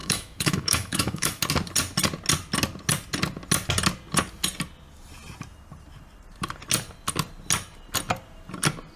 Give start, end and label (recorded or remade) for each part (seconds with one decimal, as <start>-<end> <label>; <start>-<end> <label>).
0.0-1.4 remade; 1.4-9.0 recorded